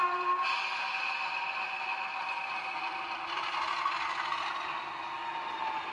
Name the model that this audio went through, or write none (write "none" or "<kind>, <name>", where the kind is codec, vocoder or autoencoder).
none